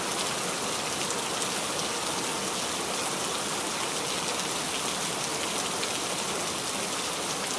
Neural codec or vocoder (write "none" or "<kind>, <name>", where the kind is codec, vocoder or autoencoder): none